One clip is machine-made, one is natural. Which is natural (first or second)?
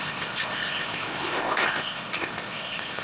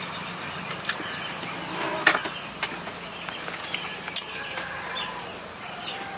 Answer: second